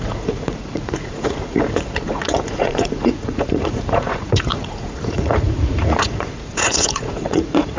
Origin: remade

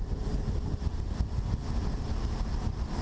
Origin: recorded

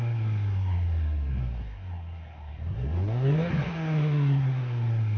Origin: remade